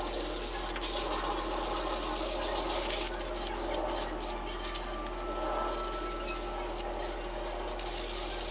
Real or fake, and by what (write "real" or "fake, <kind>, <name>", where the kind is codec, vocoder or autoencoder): real